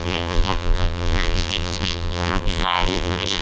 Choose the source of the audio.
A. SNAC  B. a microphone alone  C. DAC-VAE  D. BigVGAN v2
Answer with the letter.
D